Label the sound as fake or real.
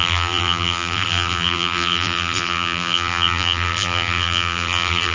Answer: fake